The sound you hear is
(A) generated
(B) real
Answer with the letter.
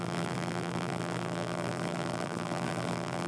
A